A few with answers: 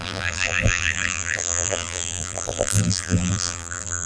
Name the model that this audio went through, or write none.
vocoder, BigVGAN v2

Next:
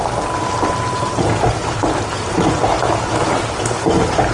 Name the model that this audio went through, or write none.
vocoder, BigVGAN v2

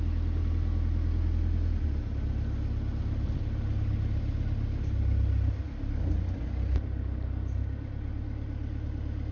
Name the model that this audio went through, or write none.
none